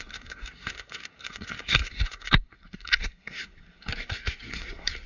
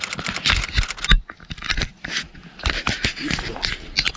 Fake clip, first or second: first